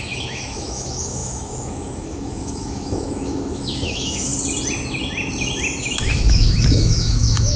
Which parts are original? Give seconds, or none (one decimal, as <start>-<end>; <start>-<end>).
4.3-5.8